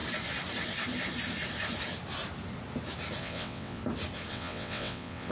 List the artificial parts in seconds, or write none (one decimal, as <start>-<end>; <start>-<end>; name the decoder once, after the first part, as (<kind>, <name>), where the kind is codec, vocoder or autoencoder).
3.2-3.8 (vocoder, WaveNeXt); 4.3-5.3